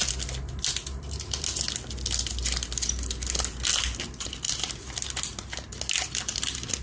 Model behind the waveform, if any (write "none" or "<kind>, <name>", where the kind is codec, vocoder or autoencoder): none